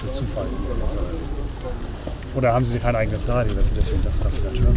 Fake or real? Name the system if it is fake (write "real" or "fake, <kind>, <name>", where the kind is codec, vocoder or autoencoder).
real